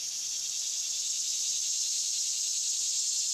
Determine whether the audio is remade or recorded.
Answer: recorded